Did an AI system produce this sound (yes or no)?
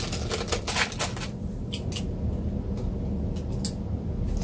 no